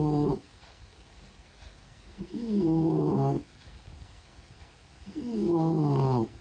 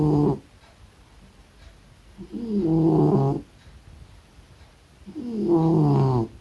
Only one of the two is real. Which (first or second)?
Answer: second